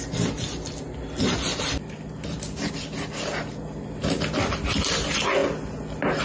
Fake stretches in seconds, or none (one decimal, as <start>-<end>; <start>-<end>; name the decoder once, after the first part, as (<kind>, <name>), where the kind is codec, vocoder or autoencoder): none